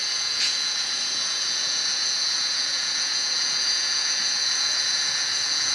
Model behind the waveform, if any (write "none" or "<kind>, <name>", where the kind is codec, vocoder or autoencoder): vocoder, Vocos